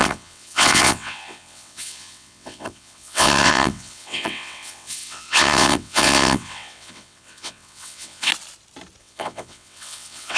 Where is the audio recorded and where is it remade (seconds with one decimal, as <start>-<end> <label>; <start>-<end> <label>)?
0.0-8.3 remade; 8.3-9.0 recorded; 9.0-10.4 remade